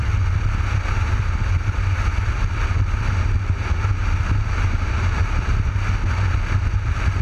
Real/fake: real